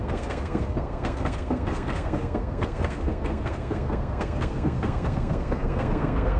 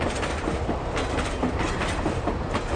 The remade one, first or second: first